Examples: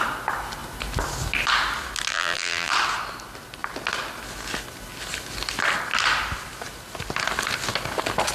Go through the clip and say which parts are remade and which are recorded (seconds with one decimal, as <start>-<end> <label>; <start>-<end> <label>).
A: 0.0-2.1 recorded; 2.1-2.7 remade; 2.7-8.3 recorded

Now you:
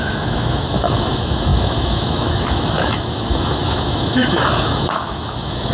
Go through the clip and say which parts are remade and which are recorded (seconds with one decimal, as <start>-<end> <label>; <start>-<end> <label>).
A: 0.0-5.7 remade

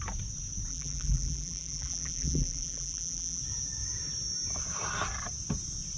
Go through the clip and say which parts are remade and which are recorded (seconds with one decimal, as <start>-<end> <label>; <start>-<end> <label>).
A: 0.0-0.7 recorded; 0.7-3.4 remade; 3.4-6.0 recorded

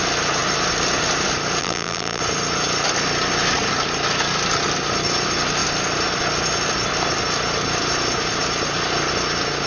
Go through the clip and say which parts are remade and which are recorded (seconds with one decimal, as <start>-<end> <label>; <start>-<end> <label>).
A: 0.0-1.6 recorded; 1.6-2.2 remade; 2.2-9.7 recorded